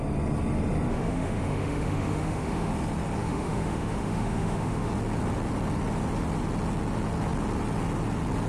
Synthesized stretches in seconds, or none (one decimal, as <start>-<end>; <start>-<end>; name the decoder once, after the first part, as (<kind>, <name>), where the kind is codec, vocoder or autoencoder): 0.9-2.7 (autoencoder, DAC-VAE); 3.2-4.9